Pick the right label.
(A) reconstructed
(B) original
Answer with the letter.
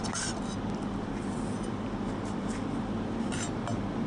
B